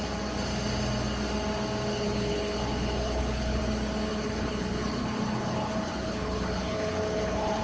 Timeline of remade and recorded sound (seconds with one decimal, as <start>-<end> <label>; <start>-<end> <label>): 0.0-1.9 recorded; 1.9-3.6 remade; 3.6-4.1 recorded; 4.1-7.6 remade